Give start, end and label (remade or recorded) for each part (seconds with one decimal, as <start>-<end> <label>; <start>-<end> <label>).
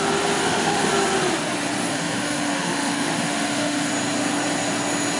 0.0-0.4 recorded; 0.4-0.9 remade; 0.9-1.9 recorded; 1.9-3.9 remade; 3.9-5.2 recorded